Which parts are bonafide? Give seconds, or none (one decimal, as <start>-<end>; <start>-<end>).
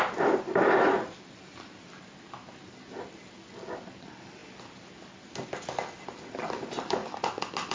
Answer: 0.0-7.7